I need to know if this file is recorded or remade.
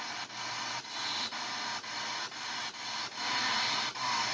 recorded